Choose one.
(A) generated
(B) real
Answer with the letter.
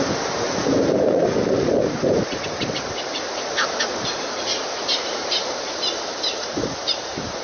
A